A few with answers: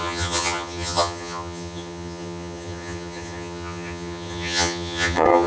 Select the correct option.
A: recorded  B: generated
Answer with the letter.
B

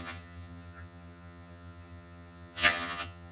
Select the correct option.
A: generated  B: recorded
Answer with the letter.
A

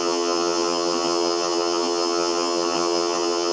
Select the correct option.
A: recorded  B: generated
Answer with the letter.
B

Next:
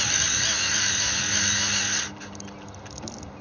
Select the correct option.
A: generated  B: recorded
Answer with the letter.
B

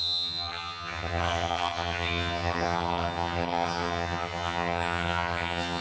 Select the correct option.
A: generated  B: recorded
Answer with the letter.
A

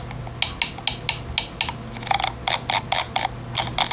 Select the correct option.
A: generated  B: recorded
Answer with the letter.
B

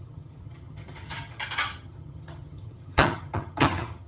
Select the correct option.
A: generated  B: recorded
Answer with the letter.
A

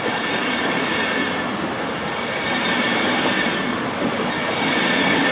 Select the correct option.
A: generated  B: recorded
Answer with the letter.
B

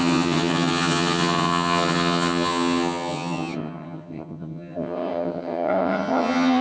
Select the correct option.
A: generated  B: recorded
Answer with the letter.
A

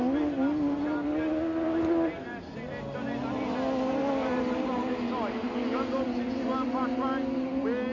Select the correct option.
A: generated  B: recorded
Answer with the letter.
B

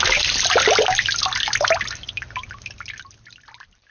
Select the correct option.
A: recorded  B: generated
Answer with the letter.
A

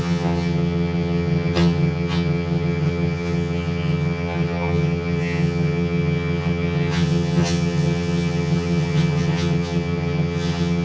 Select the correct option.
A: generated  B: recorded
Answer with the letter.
A